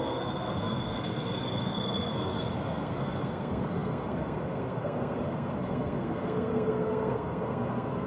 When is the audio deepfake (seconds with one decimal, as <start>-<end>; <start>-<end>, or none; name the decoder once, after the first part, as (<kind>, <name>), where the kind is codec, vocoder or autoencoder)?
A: 0.0-8.1 (codec, SNAC)